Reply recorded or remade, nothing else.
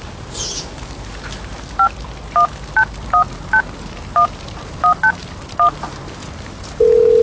recorded